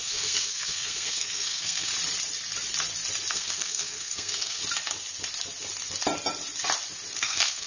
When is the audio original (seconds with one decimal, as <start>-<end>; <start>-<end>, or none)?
1.9-3.3; 4.6-7.2